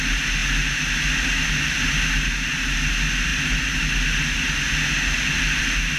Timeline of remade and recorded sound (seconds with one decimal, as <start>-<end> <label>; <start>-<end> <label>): 0.0-6.0 recorded